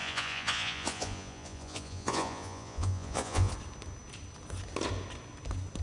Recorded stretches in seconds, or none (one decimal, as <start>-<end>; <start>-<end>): 3.5-5.8